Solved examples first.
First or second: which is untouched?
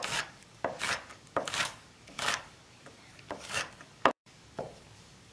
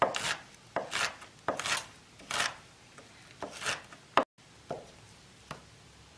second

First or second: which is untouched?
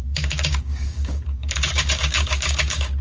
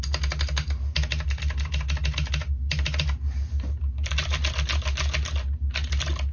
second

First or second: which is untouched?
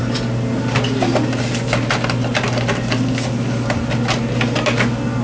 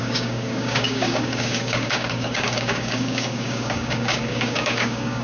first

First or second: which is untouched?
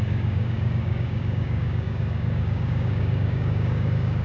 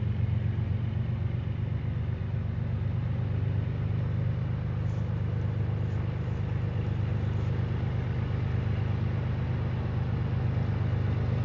second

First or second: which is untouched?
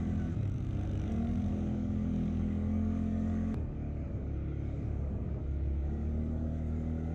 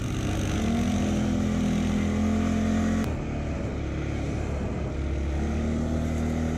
second